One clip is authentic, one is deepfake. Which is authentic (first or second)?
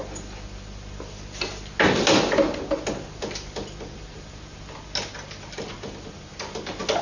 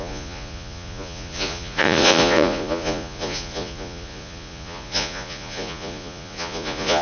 first